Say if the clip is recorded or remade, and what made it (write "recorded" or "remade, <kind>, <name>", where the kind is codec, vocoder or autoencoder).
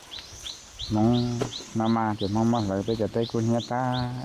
recorded